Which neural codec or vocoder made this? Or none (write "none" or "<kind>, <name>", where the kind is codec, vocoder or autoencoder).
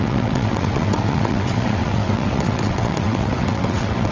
vocoder, WaveNeXt